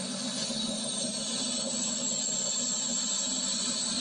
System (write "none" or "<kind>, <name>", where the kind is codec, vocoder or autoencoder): none